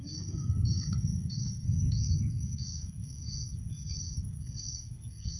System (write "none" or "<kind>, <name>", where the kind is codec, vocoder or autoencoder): codec, SNAC